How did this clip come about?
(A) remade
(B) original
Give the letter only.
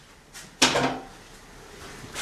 B